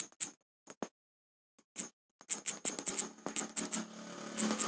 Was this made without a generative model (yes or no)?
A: yes